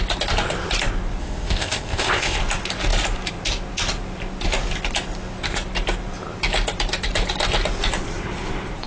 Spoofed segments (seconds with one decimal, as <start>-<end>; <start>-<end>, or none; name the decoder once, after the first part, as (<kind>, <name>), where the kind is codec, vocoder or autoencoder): 1.2-2.4 (codec, ZipCodec)